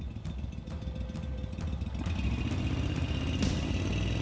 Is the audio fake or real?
real